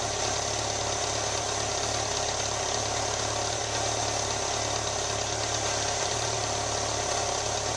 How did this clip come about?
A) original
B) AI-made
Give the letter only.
A